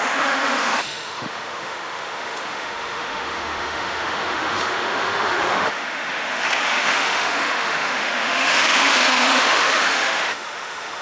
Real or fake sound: fake